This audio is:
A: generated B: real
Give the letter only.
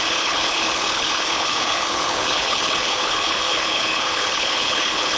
A